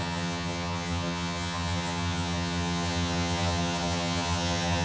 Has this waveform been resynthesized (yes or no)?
yes